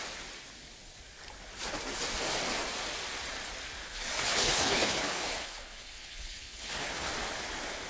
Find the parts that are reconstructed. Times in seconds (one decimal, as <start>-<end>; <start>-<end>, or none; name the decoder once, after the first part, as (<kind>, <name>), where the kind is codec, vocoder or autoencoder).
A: 3.8-7.1 (codec, HILCodec)